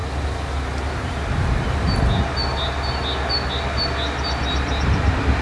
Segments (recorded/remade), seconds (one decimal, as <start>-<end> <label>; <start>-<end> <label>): 0.0-5.4 recorded